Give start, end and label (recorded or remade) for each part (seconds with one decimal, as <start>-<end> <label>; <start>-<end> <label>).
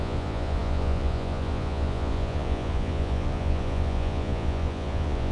0.0-5.3 remade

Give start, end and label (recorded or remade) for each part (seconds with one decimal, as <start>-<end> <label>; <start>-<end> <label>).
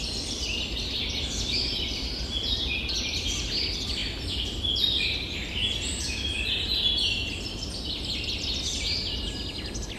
0.0-10.0 recorded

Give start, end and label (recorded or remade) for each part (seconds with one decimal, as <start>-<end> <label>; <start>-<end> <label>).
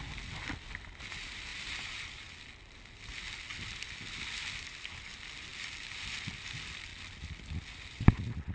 0.0-1.5 recorded; 1.5-2.3 remade; 2.3-8.5 recorded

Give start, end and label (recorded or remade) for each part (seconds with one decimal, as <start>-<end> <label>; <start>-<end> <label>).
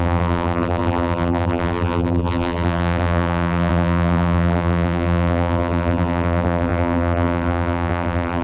0.0-8.4 remade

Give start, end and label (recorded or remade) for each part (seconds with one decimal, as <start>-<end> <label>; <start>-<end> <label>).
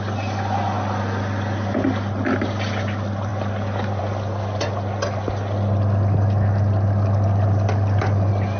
0.0-8.6 recorded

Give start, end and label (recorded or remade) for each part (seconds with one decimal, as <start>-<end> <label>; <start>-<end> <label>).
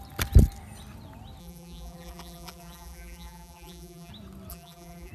0.0-1.4 recorded; 1.4-4.1 remade; 4.1-4.5 recorded; 4.5-5.1 remade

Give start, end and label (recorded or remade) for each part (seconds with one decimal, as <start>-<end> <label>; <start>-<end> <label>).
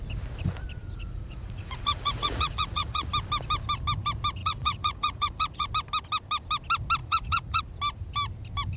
0.0-0.8 recorded; 0.8-3.1 remade; 3.1-4.4 recorded; 4.4-5.7 remade; 5.7-7.0 recorded; 7.0-7.6 remade; 7.6-8.8 recorded